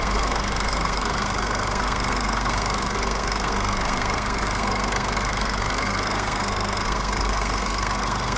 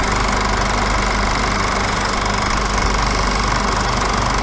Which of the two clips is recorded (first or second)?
second